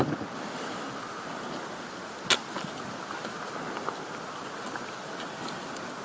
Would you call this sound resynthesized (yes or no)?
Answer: no